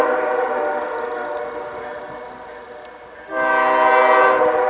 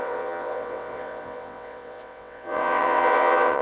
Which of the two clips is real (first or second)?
first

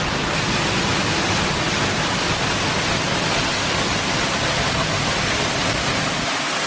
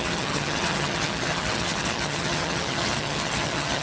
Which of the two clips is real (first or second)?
first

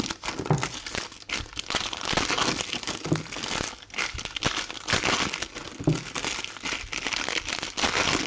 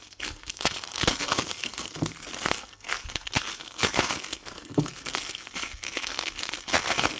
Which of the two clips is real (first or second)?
first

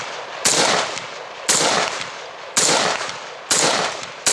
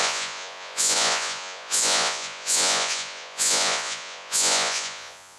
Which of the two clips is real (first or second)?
first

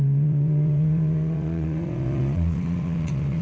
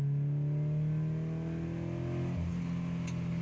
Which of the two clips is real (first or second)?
second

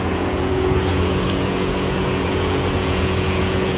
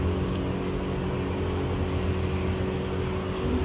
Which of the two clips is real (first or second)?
second